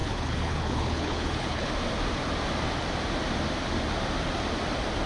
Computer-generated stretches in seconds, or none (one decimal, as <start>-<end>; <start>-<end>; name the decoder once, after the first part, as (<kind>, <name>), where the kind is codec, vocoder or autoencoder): 0.0-1.7 (codec, HILCodec)